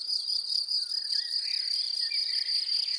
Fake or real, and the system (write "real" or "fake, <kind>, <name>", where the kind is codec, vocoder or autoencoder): real